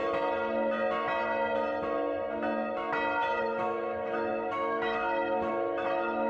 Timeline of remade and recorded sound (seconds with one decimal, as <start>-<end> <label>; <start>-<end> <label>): 0.0-3.4 recorded; 3.4-6.3 remade